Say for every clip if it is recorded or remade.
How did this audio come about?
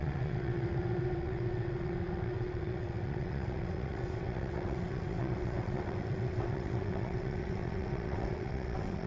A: remade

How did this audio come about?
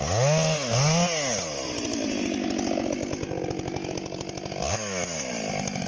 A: recorded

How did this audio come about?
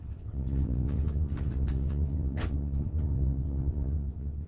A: remade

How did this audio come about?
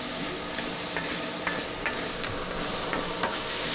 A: recorded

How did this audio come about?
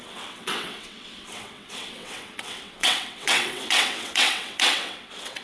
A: remade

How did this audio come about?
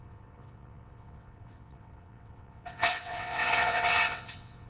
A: remade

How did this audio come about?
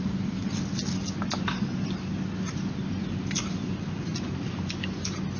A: recorded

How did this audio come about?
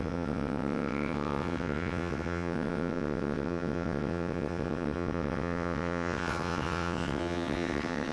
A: remade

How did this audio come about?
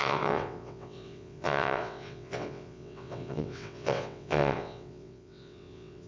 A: remade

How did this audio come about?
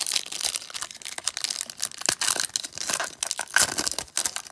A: recorded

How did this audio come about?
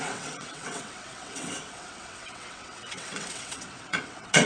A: remade